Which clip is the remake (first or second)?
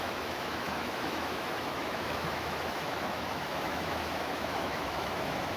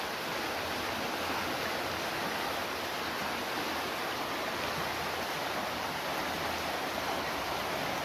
first